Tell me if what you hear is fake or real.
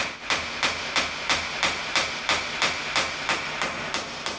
real